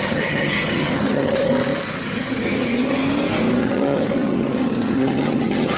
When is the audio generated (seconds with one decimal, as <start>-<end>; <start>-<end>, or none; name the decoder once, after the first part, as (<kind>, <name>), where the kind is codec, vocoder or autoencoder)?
0.0-1.5 (vocoder, HiFi-GAN); 2.0-3.0; 3.6-5.8